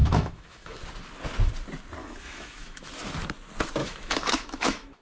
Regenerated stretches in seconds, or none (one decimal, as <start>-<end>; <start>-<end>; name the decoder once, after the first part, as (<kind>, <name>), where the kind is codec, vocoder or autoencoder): 0.0-0.8 (autoencoder, DAC-VAE); 2.0-2.9; 3.8-5.0